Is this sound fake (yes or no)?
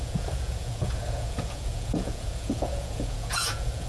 yes